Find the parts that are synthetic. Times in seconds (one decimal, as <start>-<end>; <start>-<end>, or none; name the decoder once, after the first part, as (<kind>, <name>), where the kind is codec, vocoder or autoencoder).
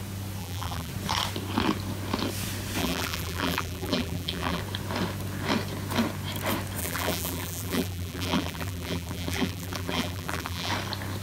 0.4-0.9 (vocoder, BigVGAN v2); 2.8-4.6; 6.8-10.7